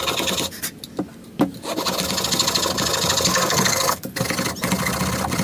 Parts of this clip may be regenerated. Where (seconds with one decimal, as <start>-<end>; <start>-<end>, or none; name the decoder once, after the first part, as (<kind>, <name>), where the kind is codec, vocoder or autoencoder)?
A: 3.3-4.0 (codec, SNAC)